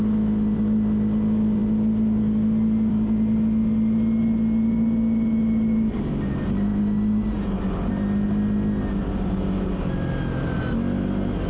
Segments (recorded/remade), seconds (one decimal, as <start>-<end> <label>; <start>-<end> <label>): 0.0-11.5 recorded